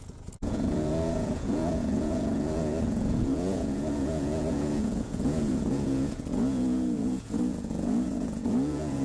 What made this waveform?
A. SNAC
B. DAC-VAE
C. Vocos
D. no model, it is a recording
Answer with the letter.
C